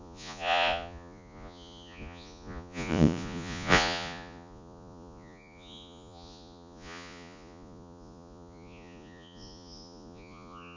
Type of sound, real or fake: fake